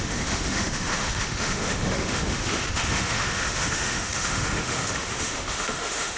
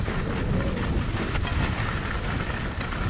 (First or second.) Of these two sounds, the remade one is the first